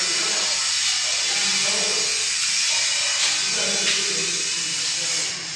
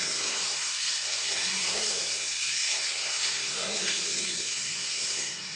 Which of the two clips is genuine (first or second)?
first